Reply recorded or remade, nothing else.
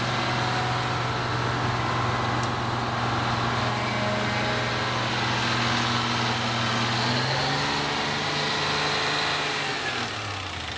recorded